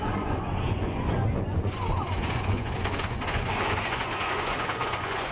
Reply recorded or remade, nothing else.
remade